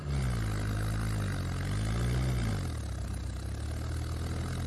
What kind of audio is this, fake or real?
real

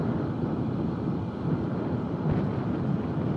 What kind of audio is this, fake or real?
real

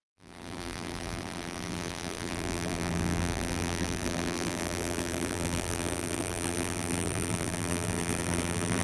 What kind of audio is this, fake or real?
fake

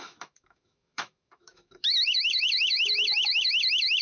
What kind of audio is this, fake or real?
fake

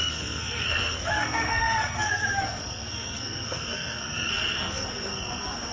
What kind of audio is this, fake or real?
fake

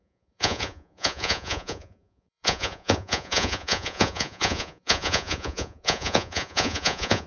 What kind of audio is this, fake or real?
fake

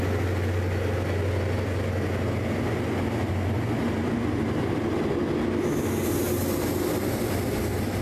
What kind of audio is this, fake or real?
real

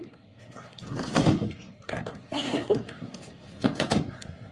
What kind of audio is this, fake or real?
fake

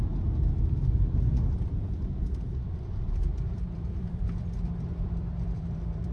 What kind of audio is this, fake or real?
fake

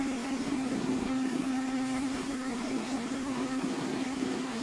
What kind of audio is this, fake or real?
fake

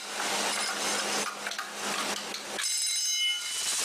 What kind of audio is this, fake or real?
real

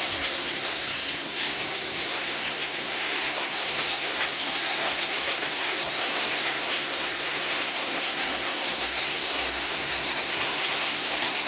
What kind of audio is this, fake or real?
fake